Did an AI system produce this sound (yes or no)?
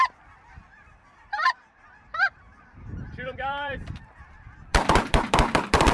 yes